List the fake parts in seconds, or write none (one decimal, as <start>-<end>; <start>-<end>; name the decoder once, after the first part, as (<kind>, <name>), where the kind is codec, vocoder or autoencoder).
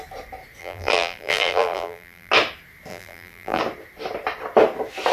0.6-2.3 (vocoder, BigVGAN v2); 2.9-3.6